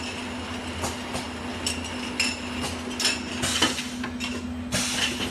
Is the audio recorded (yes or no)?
yes